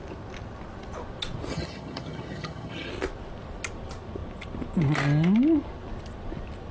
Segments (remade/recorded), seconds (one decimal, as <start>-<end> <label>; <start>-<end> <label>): 0.0-1.5 recorded; 1.5-2.9 remade; 2.9-6.7 recorded